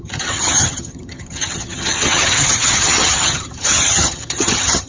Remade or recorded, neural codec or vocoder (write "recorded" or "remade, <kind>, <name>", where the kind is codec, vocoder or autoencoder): remade, vocoder, HiFi-GAN